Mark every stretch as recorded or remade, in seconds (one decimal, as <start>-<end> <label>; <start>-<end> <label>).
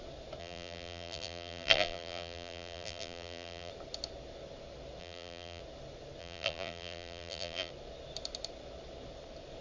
0.0-0.4 recorded; 0.4-3.7 remade; 3.7-5.0 recorded; 5.0-5.6 remade; 5.6-6.2 recorded; 6.2-7.7 remade; 7.7-9.6 recorded